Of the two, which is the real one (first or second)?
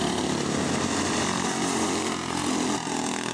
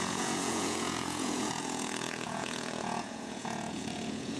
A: first